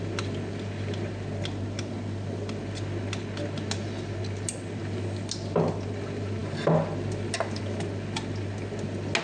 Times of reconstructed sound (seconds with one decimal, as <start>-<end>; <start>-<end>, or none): none